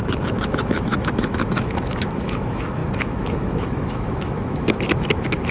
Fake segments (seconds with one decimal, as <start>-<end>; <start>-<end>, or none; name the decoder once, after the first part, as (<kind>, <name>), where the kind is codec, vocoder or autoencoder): 0.0-5.5 (autoencoder, DAC-VAE)